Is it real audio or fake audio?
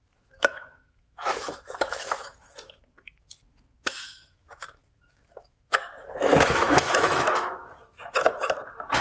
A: fake